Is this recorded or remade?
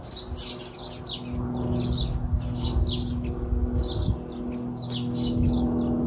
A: recorded